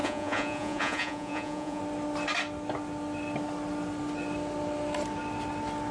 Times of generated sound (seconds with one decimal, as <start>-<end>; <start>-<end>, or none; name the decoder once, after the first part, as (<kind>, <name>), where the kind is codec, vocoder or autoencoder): 0.0-1.8 (vocoder, Vocos)